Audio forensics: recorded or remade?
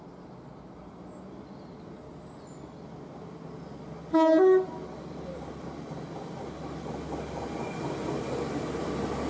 recorded